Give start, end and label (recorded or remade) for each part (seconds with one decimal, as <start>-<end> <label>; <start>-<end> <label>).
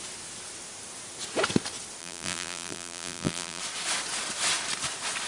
0.0-2.0 recorded; 2.0-3.6 remade; 3.6-5.3 recorded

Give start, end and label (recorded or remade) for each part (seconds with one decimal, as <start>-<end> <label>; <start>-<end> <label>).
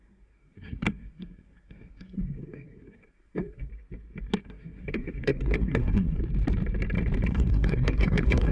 0.0-3.7 remade; 3.7-4.4 recorded; 4.4-6.2 remade; 6.2-7.3 recorded; 7.3-8.5 remade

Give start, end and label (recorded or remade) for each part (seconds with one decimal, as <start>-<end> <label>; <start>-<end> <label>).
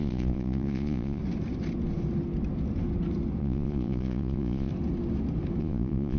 0.0-1.2 remade; 1.2-3.4 recorded; 3.4-4.7 remade; 4.7-5.6 recorded; 5.6-6.2 remade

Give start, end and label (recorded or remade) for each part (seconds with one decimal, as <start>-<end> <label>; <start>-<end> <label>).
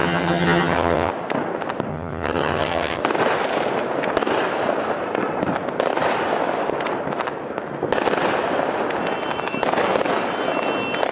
0.0-1.1 remade; 1.1-1.9 recorded; 1.9-3.0 remade; 3.0-11.1 recorded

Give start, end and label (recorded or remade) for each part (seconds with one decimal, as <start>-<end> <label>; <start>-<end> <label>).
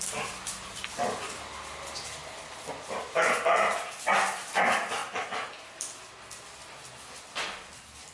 0.0-8.1 recorded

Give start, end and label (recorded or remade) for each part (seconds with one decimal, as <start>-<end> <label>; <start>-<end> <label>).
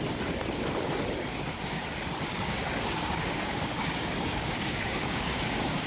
0.0-2.3 recorded; 2.3-5.9 remade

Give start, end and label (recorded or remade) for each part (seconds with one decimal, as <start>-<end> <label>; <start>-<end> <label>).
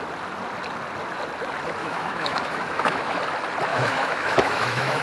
0.0-1.8 recorded; 1.8-3.2 remade; 3.2-3.7 recorded; 3.7-5.0 remade